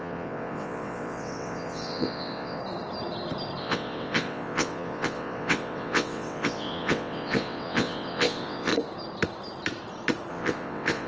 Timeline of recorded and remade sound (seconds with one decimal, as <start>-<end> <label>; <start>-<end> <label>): 0.0-2.6 remade; 2.6-3.6 recorded; 3.6-8.7 remade; 8.7-10.3 recorded; 10.3-11.1 remade